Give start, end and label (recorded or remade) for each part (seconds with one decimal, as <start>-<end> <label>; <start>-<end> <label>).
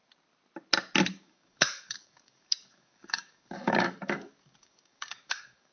0.0-1.1 recorded; 1.1-5.7 remade